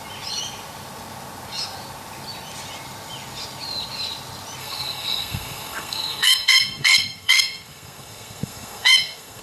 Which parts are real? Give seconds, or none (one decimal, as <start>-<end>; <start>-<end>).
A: 0.0-4.6